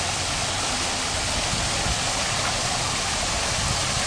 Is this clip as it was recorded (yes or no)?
yes